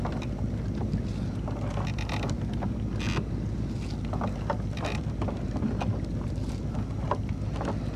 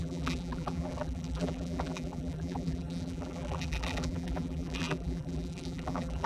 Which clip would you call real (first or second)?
first